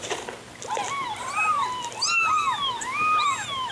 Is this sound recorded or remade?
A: recorded